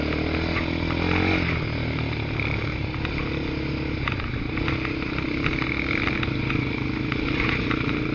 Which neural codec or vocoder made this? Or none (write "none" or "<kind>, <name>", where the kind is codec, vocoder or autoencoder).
none